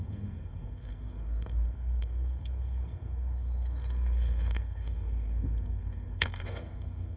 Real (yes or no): no